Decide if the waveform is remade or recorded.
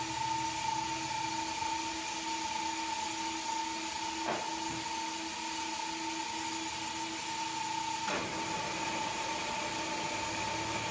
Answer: recorded